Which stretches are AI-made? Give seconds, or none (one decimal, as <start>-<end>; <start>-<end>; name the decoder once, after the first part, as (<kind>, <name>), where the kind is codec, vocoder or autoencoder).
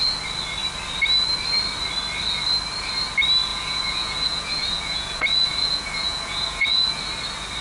3.5-7.0 (vocoder, Vocos)